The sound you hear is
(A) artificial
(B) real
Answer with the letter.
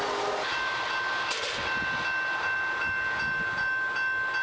B